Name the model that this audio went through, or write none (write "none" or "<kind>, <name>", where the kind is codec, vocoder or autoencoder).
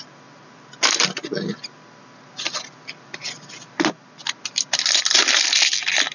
none